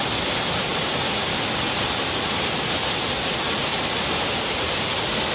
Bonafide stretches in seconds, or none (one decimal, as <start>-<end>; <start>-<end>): 0.0-0.7; 1.3-3.7; 4.8-5.3